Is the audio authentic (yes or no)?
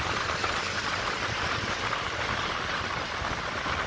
yes